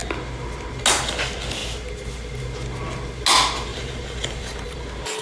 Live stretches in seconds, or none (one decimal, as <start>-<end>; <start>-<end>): 0.0-3.7; 4.8-5.2